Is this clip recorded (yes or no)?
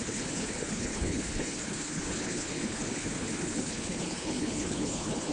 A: no